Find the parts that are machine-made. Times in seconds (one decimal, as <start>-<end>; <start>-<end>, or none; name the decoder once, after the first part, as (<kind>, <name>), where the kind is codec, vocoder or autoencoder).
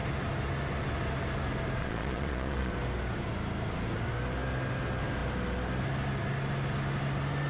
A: 1.8-2.7 (vocoder, Vocos)